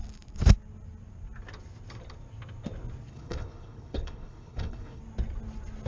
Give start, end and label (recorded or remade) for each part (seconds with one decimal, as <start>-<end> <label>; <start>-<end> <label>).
0.0-3.1 recorded; 3.1-5.0 remade; 5.0-5.9 recorded